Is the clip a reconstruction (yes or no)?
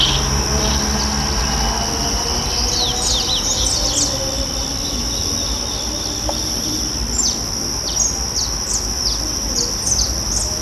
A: no